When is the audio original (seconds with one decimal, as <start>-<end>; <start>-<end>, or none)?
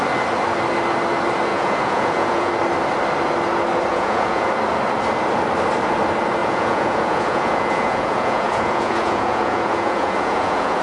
0.0-1.5; 2.5-3.9; 4.5-6.4